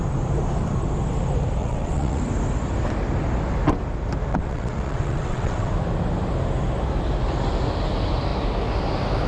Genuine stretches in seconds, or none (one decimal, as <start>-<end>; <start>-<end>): 0.0-1.6; 2.2-4.3; 5.7-9.3